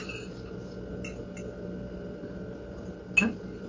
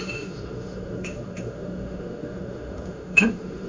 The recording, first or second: first